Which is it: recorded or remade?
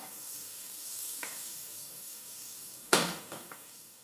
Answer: remade